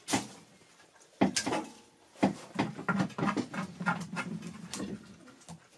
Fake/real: real